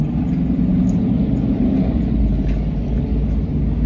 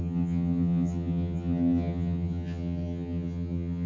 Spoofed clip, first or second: second